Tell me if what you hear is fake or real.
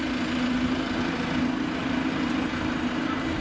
real